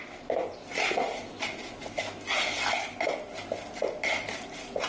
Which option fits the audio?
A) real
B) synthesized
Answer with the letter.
A